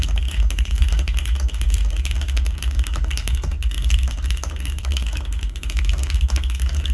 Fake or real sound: fake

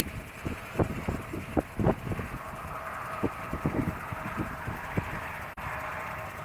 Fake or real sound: real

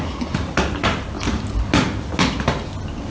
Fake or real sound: real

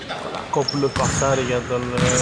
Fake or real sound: real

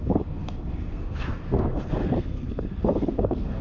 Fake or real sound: fake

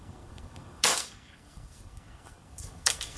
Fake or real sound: fake